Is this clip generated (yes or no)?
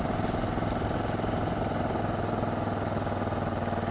no